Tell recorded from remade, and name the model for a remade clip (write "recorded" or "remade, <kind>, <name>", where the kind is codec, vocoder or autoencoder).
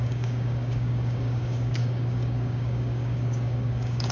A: remade, codec, DAC